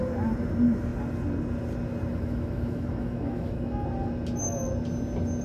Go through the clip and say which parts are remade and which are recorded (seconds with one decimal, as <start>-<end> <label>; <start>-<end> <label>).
0.0-2.1 recorded; 2.1-3.7 remade; 3.7-5.4 recorded